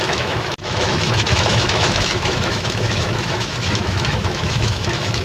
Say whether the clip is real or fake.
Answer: fake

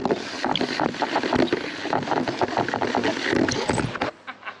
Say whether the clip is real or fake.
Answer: real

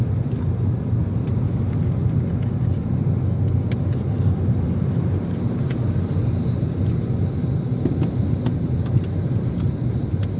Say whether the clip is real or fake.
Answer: real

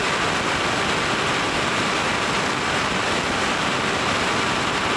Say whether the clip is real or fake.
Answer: real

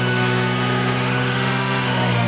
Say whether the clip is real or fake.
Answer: fake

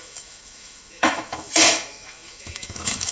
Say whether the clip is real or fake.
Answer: fake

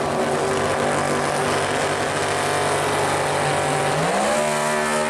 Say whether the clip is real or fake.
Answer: real